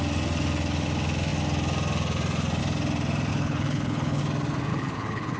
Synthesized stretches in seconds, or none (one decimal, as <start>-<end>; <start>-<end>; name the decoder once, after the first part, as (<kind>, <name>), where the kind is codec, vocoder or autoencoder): 3.3-4.2 (codec, HILCodec); 4.7-5.4